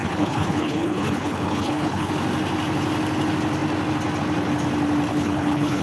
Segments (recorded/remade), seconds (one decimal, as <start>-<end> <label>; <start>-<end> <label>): 0.0-2.1 remade; 2.1-5.1 recorded; 5.1-5.8 remade